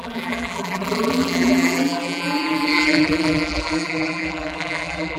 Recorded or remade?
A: remade